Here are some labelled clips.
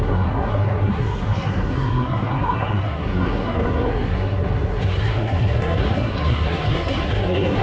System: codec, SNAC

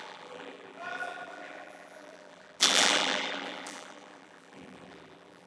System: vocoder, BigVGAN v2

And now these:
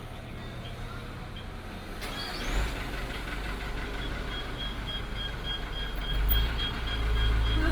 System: none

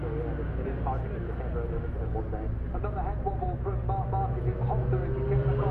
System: none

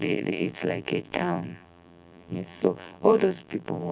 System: vocoder, BigVGAN v2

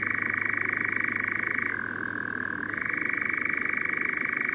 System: none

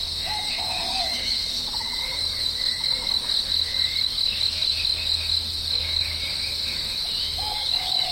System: codec, DAC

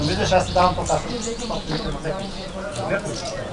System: vocoder, Vocos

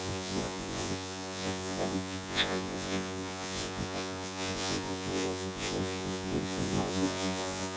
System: vocoder, Vocos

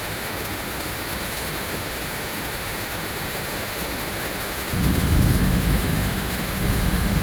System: autoencoder, DAC-VAE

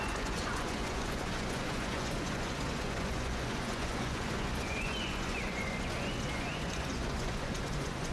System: vocoder, Vocos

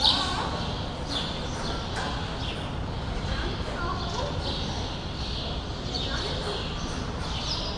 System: none